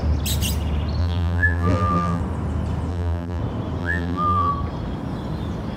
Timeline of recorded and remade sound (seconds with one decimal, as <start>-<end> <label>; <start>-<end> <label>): 0.0-1.0 recorded; 1.0-2.2 remade; 2.2-2.9 recorded; 2.9-3.4 remade; 3.4-3.8 recorded; 3.8-4.5 remade; 4.5-5.8 recorded